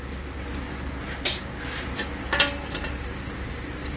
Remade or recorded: recorded